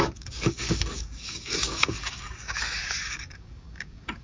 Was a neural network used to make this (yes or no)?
yes